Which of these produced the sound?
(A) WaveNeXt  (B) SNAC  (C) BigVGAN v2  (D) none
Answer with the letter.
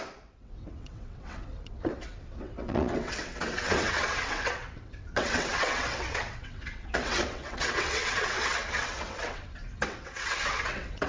A